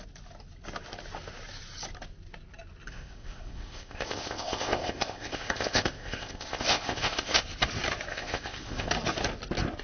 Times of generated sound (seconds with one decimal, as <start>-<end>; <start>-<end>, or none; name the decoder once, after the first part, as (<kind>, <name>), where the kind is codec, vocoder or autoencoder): 2.9-7.4 (codec, ZipCodec); 8.1-8.9